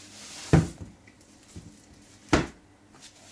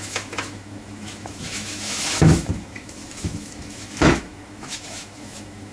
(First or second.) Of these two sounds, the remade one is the second